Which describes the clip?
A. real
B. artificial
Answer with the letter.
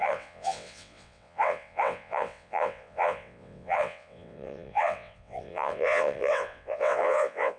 B